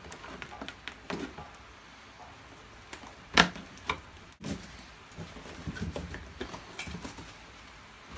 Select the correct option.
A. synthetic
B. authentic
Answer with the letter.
B